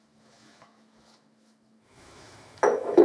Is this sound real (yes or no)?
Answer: no